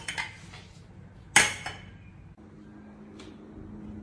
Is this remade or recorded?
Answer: recorded